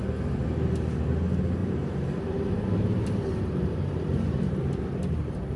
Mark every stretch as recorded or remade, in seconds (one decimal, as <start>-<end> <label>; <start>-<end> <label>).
0.0-1.6 recorded; 1.6-4.6 remade; 4.6-5.6 recorded